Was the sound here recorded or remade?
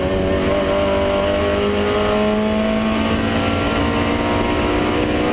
recorded